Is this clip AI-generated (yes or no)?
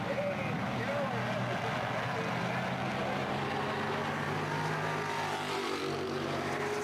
no